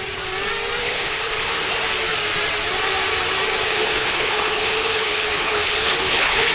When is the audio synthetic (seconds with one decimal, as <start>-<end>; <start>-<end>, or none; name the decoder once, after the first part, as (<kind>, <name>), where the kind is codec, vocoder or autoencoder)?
0.8-1.7 (codec, HILCodec); 3.7-6.5